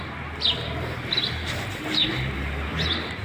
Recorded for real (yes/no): yes